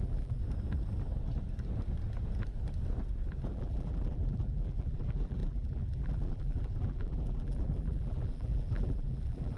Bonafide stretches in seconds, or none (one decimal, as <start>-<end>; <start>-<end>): 0.4-3.5